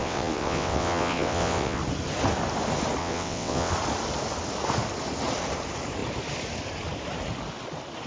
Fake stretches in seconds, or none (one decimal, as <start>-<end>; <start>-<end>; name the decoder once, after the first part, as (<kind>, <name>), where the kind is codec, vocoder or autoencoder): 0.0-1.8 (vocoder, WaveNeXt); 3.0-3.7